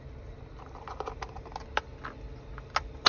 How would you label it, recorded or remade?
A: recorded